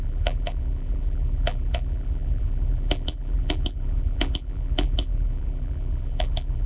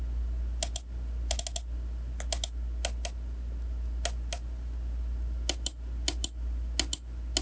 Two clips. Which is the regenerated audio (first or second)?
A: first